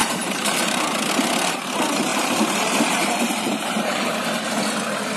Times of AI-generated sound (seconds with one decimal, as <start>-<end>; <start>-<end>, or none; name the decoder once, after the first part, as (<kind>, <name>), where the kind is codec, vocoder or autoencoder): 0.0-1.1 (vocoder, BigVGAN v2); 2.1-4.2